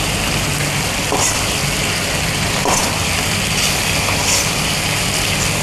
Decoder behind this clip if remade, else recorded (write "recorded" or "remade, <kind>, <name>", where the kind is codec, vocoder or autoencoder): recorded